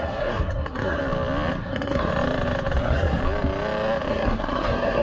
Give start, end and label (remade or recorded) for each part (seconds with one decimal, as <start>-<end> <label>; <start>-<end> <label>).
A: 0.0-1.0 remade; 1.0-1.6 recorded; 1.6-2.1 remade; 2.1-2.8 recorded; 2.8-3.2 remade; 3.2-4.1 recorded; 4.1-5.0 remade